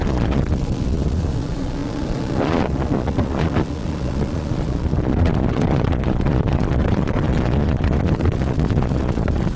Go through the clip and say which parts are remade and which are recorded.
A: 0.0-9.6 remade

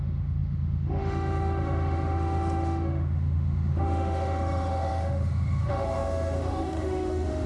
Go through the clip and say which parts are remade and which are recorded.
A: 0.0-7.5 remade

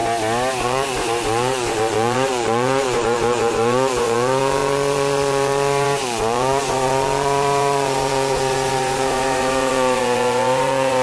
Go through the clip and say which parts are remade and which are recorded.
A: 0.0-0.6 recorded; 0.6-11.0 remade

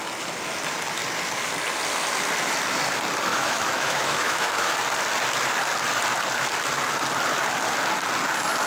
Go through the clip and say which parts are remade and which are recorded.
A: 0.0-3.3 recorded; 3.3-4.7 remade; 4.7-8.7 recorded

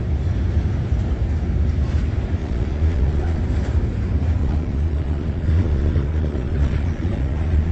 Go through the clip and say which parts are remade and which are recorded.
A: 0.0-2.4 recorded; 2.4-3.4 remade; 3.4-4.4 recorded; 4.4-7.7 remade

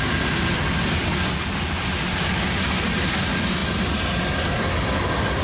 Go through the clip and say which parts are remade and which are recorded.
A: 0.0-5.4 recorded

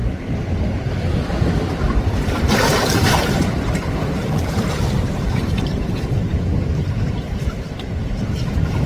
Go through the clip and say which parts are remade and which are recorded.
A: 0.0-1.3 recorded; 1.3-8.9 remade